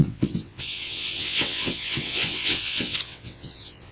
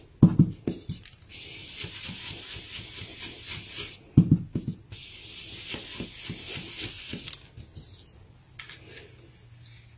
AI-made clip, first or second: first